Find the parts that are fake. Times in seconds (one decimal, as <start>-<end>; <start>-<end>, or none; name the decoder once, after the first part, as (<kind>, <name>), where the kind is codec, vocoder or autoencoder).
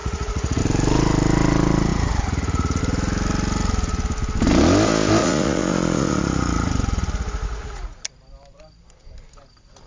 0.0-0.6 (vocoder, Vocos); 1.9-2.8; 5.2-8.0